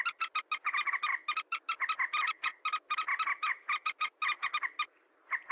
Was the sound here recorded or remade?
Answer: recorded